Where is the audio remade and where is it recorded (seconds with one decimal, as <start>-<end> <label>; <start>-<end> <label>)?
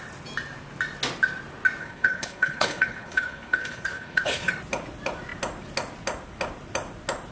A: 0.0-1.8 recorded; 1.8-4.5 remade; 4.5-7.3 recorded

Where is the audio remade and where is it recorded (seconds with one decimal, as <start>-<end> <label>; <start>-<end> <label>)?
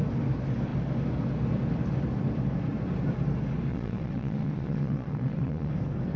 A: 0.0-3.7 recorded; 3.7-5.7 remade; 5.7-6.2 recorded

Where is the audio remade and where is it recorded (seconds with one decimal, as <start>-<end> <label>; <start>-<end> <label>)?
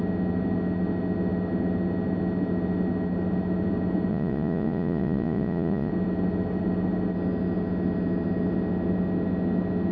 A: 0.0-4.1 recorded; 4.1-5.9 remade; 5.9-9.9 recorded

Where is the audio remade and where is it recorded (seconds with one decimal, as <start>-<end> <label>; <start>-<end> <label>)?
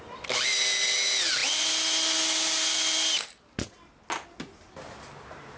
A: 0.0-5.6 recorded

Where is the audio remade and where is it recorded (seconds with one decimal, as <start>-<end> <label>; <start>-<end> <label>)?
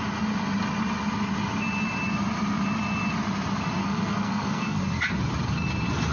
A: 0.0-3.8 recorded; 3.8-4.8 remade; 4.8-6.1 recorded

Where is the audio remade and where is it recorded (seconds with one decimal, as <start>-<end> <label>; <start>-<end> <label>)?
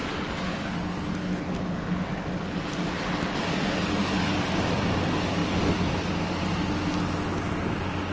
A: 0.0-8.1 recorded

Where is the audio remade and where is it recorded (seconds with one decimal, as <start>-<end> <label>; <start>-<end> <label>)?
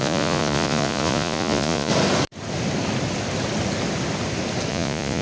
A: 0.0-1.9 remade; 1.9-4.7 recorded; 4.7-5.2 remade